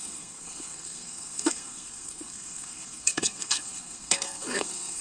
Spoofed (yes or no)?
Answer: yes